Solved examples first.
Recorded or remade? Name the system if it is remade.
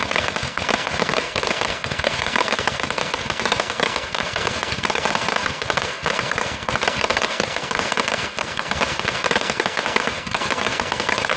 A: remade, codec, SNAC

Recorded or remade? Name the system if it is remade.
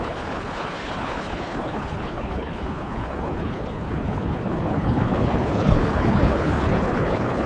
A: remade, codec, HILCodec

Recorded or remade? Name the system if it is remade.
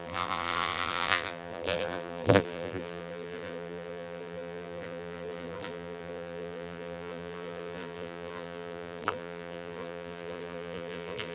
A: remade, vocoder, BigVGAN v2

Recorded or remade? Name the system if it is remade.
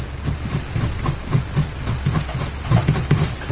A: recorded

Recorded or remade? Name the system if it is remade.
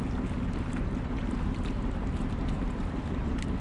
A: recorded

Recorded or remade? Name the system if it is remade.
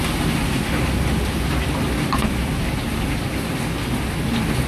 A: recorded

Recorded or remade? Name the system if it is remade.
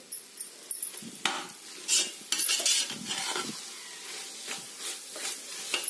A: recorded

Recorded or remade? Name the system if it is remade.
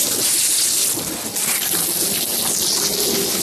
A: recorded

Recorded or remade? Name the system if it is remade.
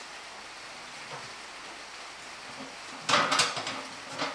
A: recorded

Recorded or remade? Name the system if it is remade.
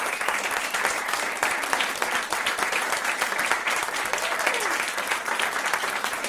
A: remade, vocoder, BigVGAN v2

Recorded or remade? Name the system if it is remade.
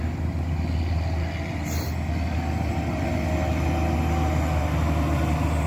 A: recorded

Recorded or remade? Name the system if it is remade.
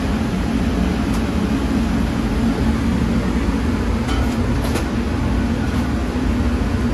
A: recorded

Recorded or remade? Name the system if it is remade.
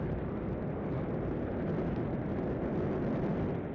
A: remade, vocoder, BigVGAN v2